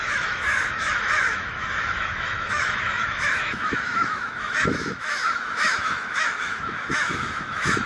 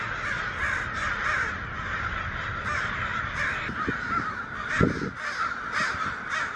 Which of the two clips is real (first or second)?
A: second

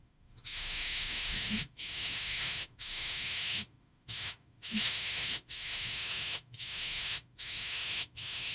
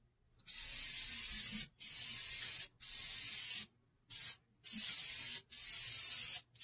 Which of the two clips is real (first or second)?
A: second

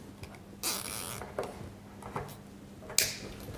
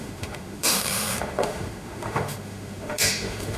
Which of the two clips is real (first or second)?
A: first